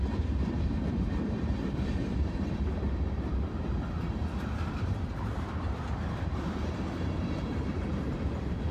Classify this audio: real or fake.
fake